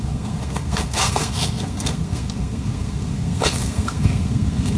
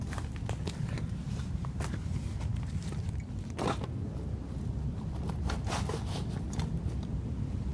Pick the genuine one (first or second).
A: second